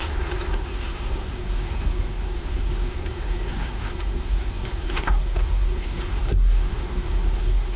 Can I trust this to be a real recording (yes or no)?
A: no